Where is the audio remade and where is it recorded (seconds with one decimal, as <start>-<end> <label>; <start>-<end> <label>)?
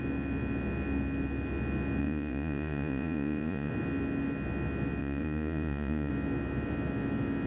0.0-2.0 recorded; 2.0-3.7 remade; 3.7-5.0 recorded; 5.0-6.1 remade; 6.1-7.5 recorded